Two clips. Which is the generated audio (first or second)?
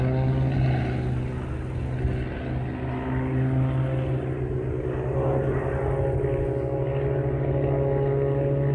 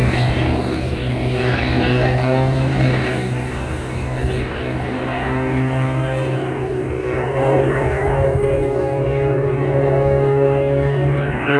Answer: second